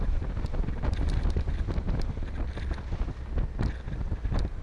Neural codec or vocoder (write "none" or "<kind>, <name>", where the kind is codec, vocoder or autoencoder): none